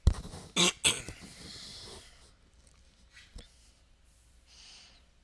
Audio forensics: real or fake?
real